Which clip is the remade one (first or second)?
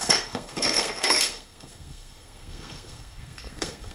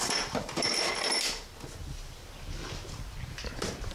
first